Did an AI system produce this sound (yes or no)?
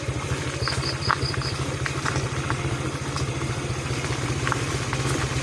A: no